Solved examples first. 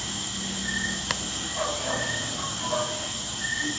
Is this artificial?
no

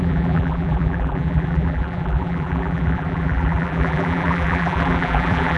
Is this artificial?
yes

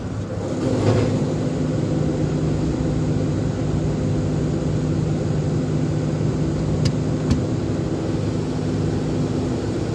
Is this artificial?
no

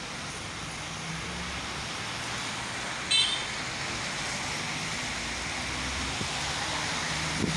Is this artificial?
no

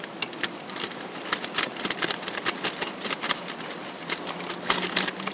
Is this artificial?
no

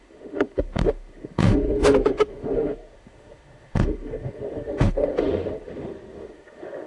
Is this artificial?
yes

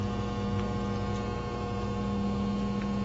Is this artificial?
yes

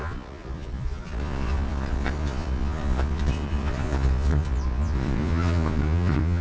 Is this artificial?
yes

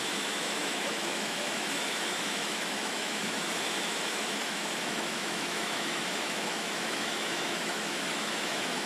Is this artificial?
yes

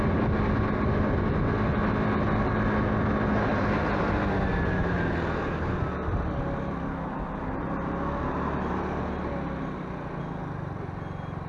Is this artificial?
no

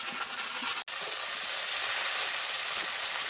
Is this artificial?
no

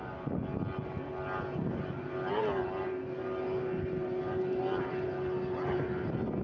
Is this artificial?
no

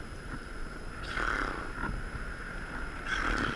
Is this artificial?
no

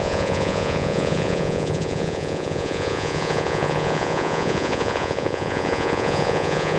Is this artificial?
yes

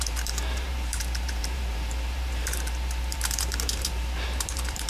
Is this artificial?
yes